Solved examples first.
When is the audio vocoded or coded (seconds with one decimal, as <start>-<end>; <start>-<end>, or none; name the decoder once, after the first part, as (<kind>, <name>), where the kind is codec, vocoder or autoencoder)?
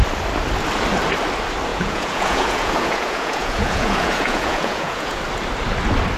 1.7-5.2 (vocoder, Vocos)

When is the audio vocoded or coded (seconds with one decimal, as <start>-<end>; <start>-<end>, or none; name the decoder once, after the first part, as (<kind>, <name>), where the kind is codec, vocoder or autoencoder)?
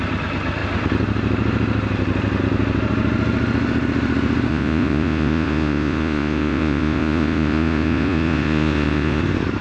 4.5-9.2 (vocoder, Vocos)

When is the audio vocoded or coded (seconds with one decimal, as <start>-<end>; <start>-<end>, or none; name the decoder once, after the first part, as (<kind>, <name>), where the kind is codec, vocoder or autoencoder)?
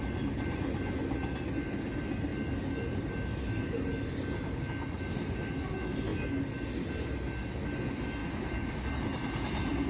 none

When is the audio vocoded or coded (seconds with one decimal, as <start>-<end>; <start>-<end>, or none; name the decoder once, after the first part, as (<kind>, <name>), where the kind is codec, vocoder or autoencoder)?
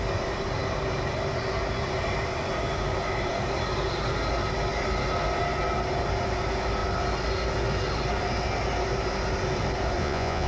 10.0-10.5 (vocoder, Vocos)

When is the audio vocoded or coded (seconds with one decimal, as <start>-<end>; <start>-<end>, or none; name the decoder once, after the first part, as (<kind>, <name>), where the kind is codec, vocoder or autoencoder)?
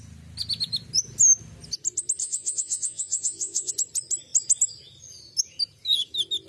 2.2-3.7 (vocoder, Vocos)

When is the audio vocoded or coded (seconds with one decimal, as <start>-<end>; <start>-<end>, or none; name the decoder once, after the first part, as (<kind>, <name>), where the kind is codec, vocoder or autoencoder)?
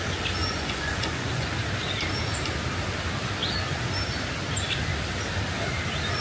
0.4-1.5 (vocoder, Vocos)